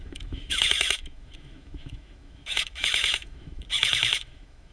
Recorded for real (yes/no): no